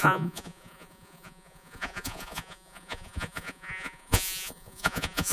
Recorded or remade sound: remade